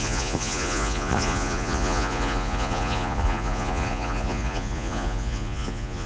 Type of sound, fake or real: fake